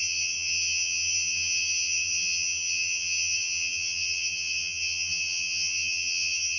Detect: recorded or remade remade